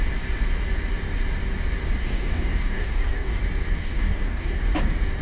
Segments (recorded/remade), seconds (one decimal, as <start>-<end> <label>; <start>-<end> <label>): 0.0-2.0 recorded; 2.0-3.4 remade; 3.4-3.8 recorded; 3.8-4.6 remade; 4.6-5.2 recorded